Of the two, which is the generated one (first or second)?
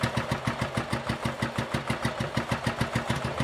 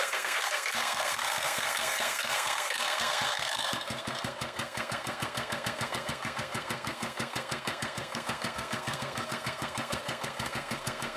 second